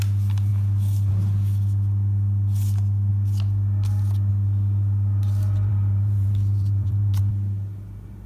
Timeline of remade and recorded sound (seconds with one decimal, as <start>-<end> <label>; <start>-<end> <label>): 0.0-5.7 recorded; 5.7-7.2 remade; 7.2-8.3 recorded